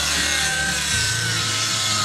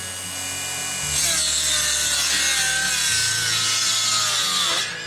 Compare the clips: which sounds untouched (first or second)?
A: second